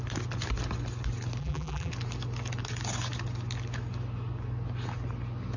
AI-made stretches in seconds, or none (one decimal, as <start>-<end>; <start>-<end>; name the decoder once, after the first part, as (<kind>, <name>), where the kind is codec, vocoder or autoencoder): 1.4-1.9 (vocoder, BigVGAN v2)